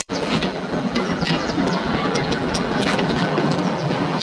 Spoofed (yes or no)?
yes